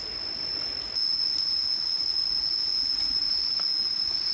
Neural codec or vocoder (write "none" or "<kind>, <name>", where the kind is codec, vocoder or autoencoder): none